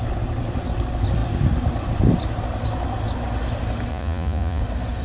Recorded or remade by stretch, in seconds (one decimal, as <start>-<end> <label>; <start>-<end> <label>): 0.0-3.9 recorded; 3.9-4.6 remade; 4.6-5.0 recorded